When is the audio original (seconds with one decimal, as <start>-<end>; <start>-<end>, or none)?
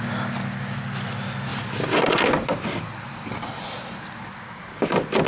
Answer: 0.0-5.3